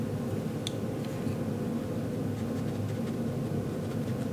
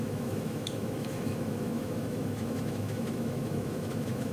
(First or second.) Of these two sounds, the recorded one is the first